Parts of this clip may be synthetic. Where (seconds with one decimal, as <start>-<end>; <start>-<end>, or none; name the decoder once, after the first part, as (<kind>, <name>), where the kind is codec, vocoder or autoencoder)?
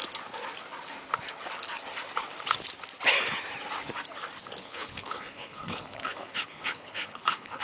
4.6-7.6 (codec, HILCodec)